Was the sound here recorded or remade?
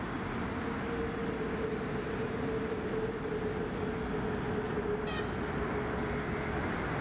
recorded